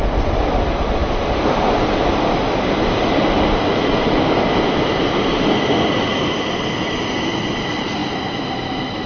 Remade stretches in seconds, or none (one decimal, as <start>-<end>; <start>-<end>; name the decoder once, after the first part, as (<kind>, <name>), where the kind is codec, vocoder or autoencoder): none